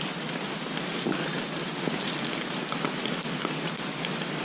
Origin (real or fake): real